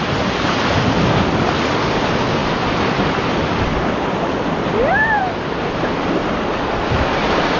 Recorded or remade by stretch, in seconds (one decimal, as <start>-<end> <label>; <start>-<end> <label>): 0.0-2.4 recorded; 2.4-5.2 remade; 5.2-7.6 recorded